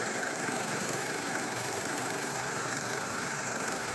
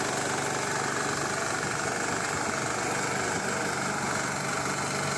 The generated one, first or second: first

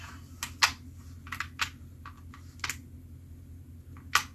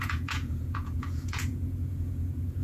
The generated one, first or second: second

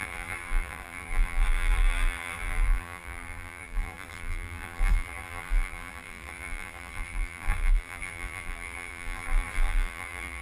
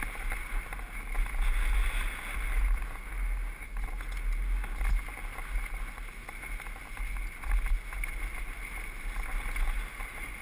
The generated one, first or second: first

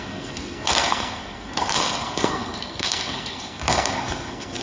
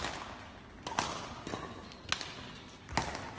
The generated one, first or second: first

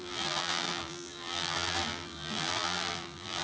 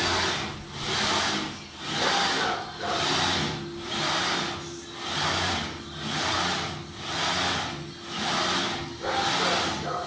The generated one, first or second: first